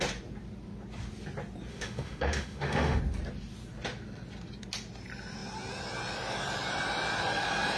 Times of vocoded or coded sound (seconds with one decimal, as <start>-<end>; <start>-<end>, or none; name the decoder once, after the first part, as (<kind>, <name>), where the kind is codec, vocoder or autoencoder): 1.7-3.0 (autoencoder, DAC-VAE)